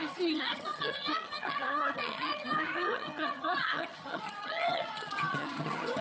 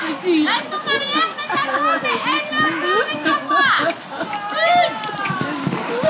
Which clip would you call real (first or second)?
second